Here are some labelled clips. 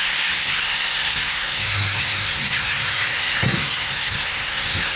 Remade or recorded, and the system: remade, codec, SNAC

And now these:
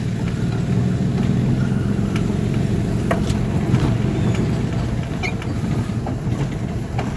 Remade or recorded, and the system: recorded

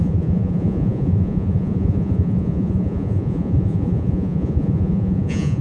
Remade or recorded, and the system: remade, vocoder, Vocos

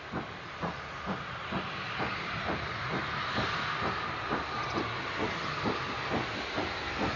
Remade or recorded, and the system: recorded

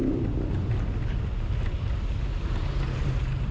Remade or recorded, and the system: recorded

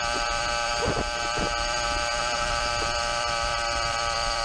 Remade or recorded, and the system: remade, vocoder, BigVGAN v2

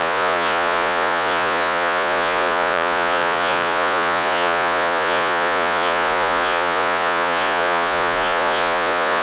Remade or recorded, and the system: remade, vocoder, Vocos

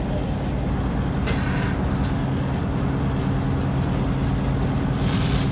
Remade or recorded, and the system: recorded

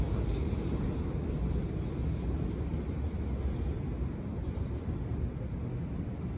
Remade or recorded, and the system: recorded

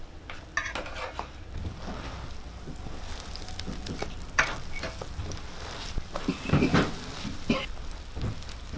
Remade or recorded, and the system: recorded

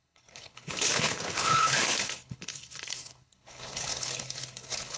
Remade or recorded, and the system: remade, codec, HILCodec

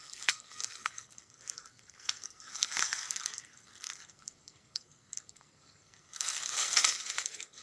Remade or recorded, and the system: remade, codec, SNAC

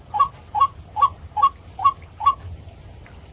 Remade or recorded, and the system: recorded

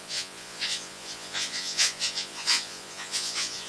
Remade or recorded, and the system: remade, vocoder, Vocos